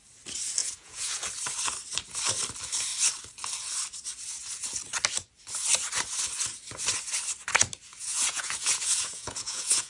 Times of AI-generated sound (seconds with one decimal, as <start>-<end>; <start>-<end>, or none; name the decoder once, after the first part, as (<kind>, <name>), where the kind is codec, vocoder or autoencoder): 0.6-1.2 (vocoder, Vocos); 7.9-9.9